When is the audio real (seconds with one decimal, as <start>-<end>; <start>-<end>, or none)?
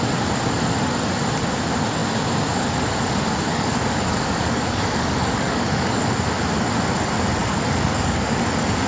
0.0-3.5; 6.1-7.4; 8.4-8.9